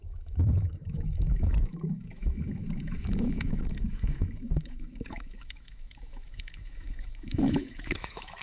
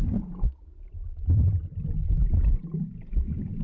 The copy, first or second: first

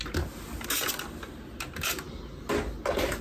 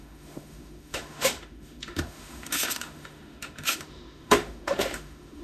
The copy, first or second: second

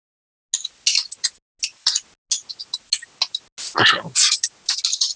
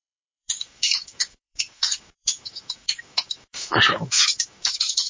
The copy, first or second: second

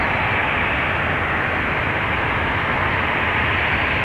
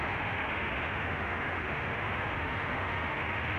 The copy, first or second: second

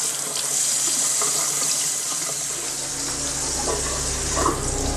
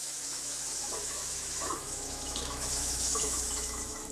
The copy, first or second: second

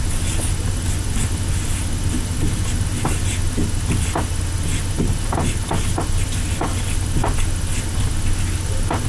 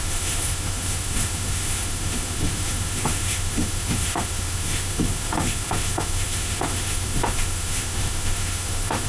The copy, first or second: second